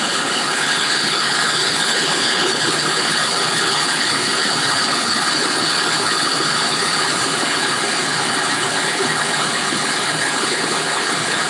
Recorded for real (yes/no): no